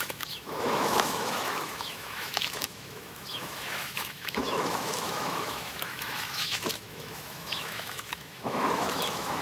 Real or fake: fake